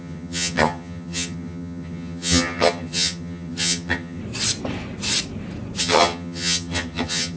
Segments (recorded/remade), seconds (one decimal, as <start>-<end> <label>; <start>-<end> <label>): 0.0-4.2 remade; 4.2-5.8 recorded; 5.8-7.4 remade

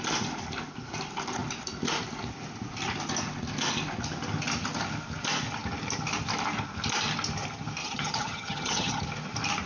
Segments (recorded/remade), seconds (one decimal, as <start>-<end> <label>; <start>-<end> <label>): 0.0-7.8 recorded; 7.8-9.0 remade; 9.0-9.7 recorded

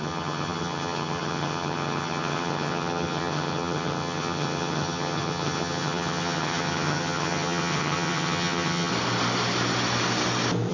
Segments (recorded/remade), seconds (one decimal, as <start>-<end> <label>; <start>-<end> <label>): 0.0-8.9 remade; 8.9-10.7 recorded

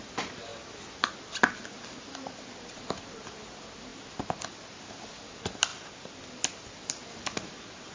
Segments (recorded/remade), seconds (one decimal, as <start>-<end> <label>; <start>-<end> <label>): 0.0-7.9 recorded

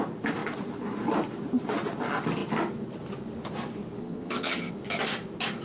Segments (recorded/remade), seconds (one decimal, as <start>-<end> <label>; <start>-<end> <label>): 0.0-4.0 recorded; 4.0-4.7 remade; 4.7-5.6 recorded

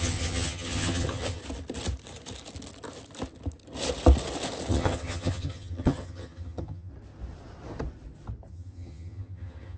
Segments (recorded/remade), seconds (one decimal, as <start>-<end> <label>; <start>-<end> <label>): 0.0-1.4 remade; 1.4-4.7 recorded; 4.7-6.9 remade; 6.9-8.5 recorded; 8.5-9.8 remade

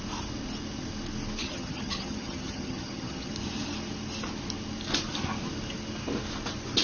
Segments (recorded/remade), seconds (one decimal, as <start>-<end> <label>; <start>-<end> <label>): 0.0-1.4 recorded; 1.4-3.3 remade; 3.3-6.8 recorded